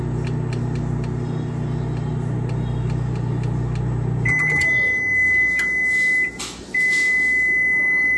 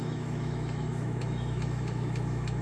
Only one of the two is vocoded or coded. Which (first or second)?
second